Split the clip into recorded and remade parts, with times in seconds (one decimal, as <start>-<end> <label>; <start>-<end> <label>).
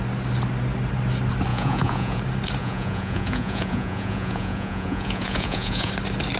0.0-1.5 recorded; 1.5-2.2 remade; 2.2-2.6 recorded; 2.6-5.9 remade; 5.9-6.4 recorded